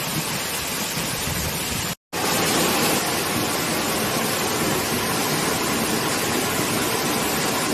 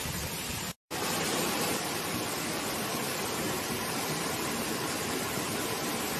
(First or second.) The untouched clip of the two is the first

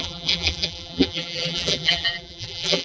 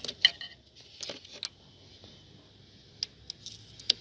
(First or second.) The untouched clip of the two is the second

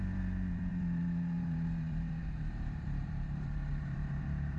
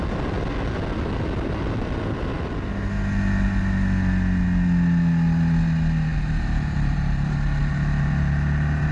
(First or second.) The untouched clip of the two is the second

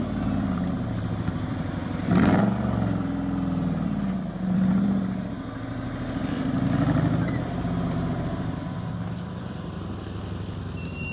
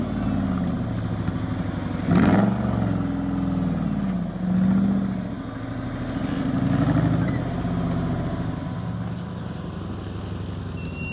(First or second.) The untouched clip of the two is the second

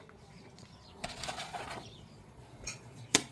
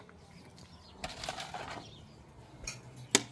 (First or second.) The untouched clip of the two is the second